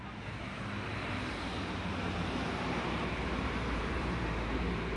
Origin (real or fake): fake